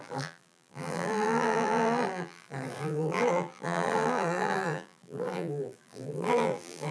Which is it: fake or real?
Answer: fake